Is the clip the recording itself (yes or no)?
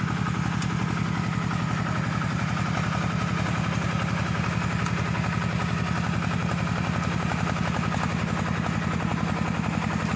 yes